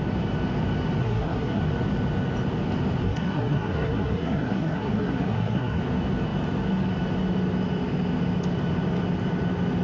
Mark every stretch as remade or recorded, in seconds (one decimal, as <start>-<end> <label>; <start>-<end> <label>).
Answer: 0.0-1.0 recorded; 1.0-1.6 remade; 1.6-3.0 recorded; 3.0-5.8 remade; 5.8-9.8 recorded